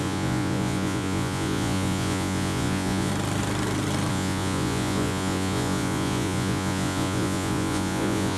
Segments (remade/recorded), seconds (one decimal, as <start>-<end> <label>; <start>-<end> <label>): 0.0-3.1 remade; 3.1-4.1 recorded; 4.1-8.4 remade